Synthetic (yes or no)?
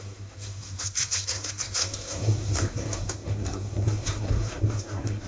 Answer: yes